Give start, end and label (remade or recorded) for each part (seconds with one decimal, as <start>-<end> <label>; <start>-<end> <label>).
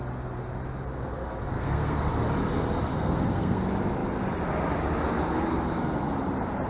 0.0-1.5 recorded; 1.5-2.1 remade; 2.1-2.9 recorded; 2.9-3.6 remade; 3.6-6.7 recorded